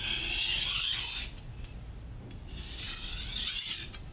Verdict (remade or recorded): recorded